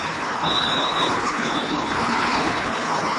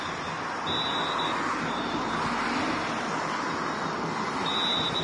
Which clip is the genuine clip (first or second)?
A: second